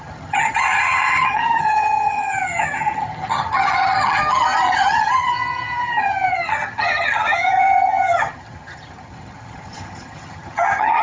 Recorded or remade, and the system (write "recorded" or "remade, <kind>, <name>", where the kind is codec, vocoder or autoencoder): remade, vocoder, HiFi-GAN